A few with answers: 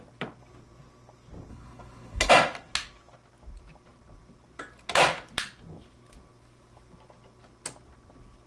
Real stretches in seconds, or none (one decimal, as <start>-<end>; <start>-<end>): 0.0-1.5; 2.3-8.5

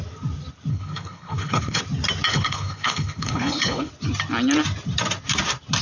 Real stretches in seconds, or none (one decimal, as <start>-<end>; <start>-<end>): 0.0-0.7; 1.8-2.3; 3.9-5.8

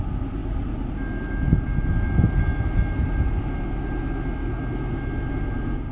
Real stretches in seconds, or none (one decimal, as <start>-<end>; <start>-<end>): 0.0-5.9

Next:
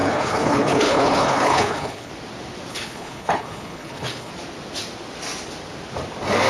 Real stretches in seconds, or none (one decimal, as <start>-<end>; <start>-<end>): 2.1-2.7; 4.3-6.5

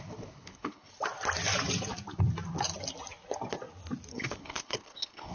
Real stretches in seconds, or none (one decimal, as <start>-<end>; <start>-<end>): 0.9-4.1